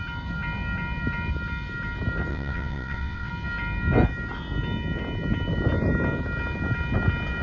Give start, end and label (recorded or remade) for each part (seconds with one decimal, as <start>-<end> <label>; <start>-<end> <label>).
0.0-2.3 recorded; 2.3-3.3 remade; 3.3-7.4 recorded